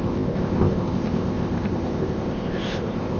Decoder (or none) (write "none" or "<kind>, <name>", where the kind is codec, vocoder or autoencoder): codec, ZipCodec